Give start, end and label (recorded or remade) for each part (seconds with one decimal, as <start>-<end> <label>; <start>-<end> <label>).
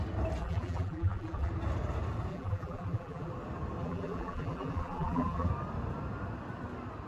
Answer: 0.0-0.4 recorded; 0.4-1.5 remade; 1.5-2.3 recorded; 2.3-3.3 remade; 3.3-3.8 recorded; 3.8-5.5 remade; 5.5-7.1 recorded